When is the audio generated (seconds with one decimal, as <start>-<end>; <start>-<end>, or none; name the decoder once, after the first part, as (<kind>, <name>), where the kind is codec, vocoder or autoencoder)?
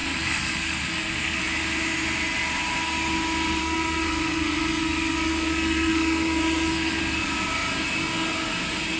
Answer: 0.0-1.4 (codec, SNAC); 3.6-7.0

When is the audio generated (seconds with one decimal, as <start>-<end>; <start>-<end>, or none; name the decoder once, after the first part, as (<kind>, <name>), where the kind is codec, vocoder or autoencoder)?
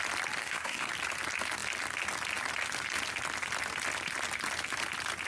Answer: 0.4-0.9 (codec, SNAC)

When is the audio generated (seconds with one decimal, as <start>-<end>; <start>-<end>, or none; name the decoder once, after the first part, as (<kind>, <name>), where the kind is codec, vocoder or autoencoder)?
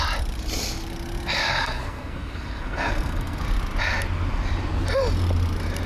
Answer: 1.6-3.4 (codec, SNAC)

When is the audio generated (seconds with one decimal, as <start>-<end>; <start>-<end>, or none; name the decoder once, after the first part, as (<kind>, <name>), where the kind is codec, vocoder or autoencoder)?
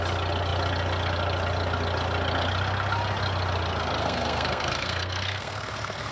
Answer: 4.0-6.1 (codec, SNAC)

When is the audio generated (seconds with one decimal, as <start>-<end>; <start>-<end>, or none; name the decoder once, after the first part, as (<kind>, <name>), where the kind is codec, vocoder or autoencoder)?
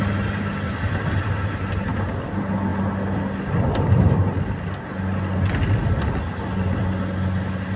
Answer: none